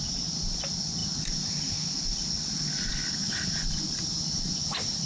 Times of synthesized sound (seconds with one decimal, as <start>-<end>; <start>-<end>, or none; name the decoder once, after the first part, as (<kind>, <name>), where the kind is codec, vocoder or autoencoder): none

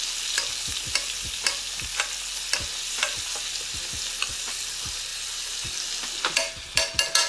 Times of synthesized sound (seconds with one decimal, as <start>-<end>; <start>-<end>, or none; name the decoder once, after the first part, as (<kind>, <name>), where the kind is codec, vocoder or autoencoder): none